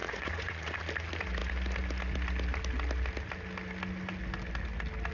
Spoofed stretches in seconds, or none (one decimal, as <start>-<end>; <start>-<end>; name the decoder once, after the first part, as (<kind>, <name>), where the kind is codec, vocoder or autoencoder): 0.0-0.8 (vocoder, Vocos)